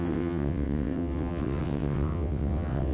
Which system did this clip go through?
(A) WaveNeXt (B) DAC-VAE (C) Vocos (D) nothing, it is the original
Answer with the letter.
A